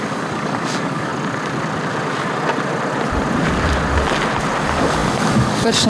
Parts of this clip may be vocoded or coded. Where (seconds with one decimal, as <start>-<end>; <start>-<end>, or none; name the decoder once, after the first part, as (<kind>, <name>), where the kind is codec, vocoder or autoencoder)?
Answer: 0.0-1.1 (codec, DAC); 4.6-5.9